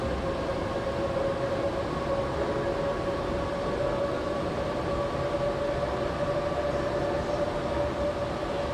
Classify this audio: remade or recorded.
recorded